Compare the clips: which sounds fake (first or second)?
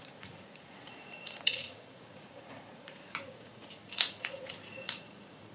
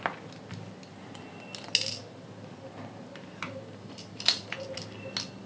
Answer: first